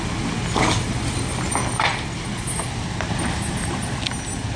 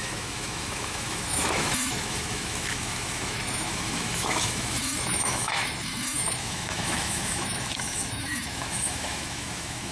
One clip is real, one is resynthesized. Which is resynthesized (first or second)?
second